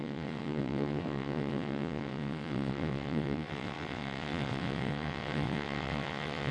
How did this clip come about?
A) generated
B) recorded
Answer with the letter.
A